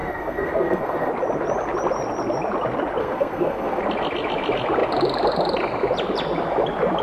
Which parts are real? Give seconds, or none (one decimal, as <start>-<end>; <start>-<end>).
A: 1.1-3.0; 3.8-7.0